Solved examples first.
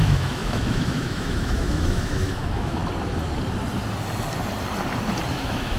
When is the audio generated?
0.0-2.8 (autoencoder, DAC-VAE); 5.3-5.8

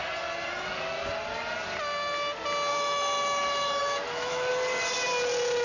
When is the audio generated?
2.7-4.5 (autoencoder, DAC-VAE)

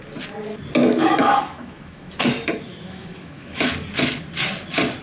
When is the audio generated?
0.8-2.3 (autoencoder, DAC-VAE); 2.7-3.7

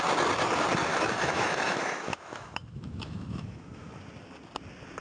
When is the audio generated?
0.9-3.9 (autoencoder, DAC-VAE)

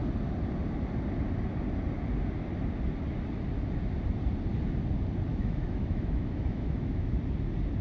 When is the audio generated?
5.3-7.2 (autoencoder, DAC-VAE)

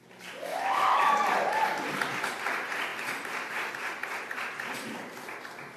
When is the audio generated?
0.5-1.1 (autoencoder, DAC-VAE)

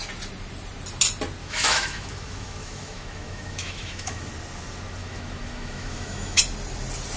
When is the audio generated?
1.4-4.3 (autoencoder, DAC-VAE); 5.0-6.4